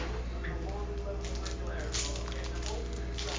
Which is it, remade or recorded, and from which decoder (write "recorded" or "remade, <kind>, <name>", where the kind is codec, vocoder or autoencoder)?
recorded